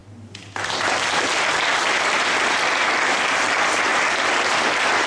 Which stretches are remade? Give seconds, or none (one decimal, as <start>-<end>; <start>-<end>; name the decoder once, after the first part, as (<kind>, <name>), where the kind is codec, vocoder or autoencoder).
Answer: none